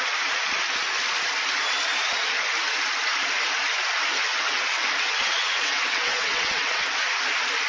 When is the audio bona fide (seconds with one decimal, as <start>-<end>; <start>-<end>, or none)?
0.0-4.3; 7.1-7.7